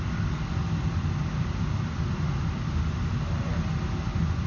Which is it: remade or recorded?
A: recorded